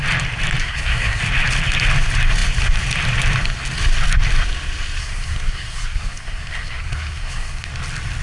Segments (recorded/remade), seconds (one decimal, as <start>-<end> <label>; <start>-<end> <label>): 0.0-0.6 recorded; 0.6-1.2 remade; 1.2-5.0 recorded; 5.0-7.7 remade; 7.7-8.2 recorded